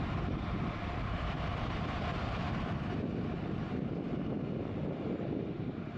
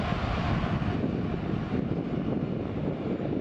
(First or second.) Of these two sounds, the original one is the second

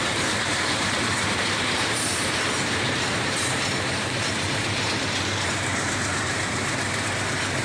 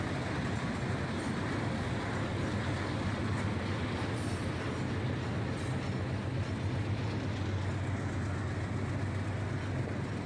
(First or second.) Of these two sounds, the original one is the second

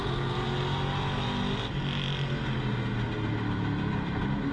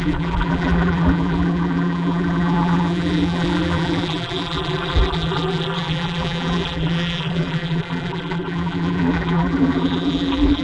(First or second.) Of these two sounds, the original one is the first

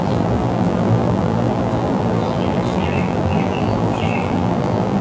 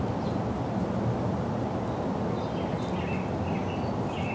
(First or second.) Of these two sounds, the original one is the second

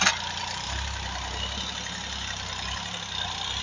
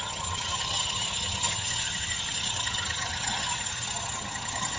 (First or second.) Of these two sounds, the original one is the first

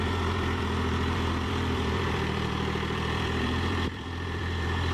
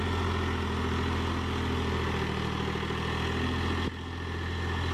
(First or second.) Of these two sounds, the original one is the second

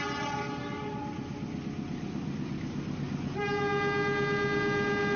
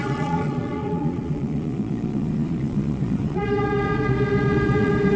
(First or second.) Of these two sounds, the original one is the first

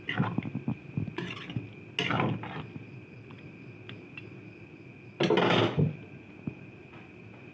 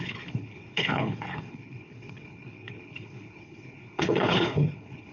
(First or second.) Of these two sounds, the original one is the first